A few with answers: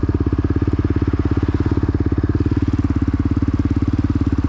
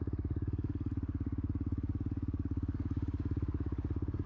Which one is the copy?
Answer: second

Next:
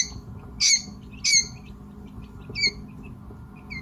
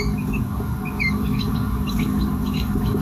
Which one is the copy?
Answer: second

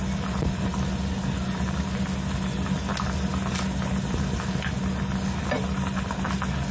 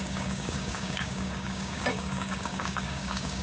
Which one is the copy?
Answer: second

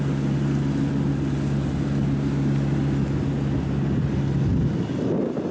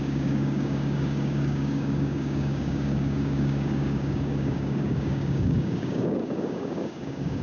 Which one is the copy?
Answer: second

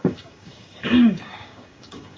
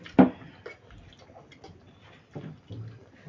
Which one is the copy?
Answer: first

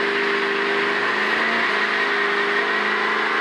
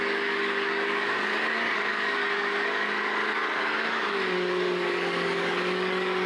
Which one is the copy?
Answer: second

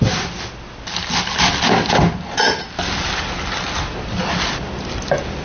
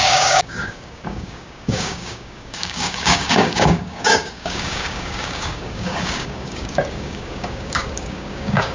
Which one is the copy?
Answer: second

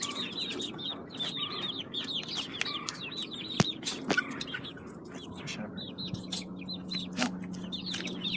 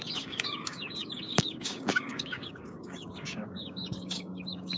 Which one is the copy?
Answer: second